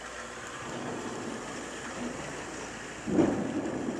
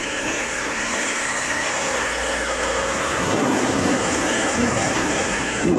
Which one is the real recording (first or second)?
first